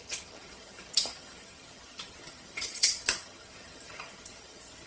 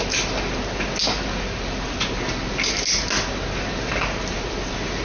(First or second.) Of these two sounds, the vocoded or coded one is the first